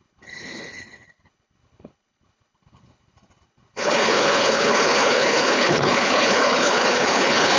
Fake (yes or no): yes